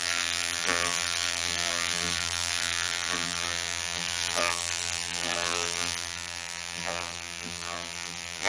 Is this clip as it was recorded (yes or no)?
no